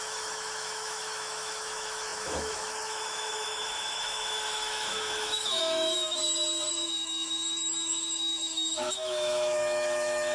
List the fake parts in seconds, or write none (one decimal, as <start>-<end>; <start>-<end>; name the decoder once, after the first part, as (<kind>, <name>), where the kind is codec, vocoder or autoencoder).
0.0-6.2 (autoencoder, DAC-VAE); 6.7-10.3